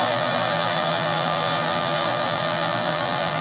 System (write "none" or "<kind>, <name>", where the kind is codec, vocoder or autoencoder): vocoder, BigVGAN v2